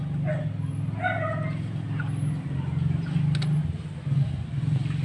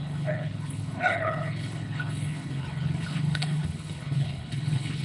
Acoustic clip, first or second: first